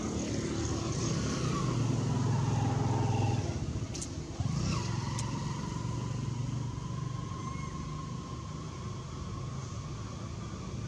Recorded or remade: recorded